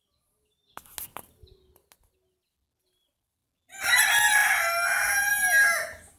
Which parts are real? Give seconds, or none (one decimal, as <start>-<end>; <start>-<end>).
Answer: 0.0-6.2